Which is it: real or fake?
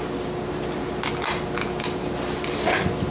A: real